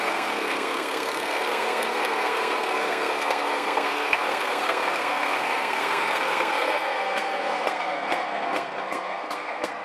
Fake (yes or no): yes